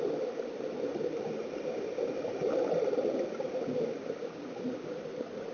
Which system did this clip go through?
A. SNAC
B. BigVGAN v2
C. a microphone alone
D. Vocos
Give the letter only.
C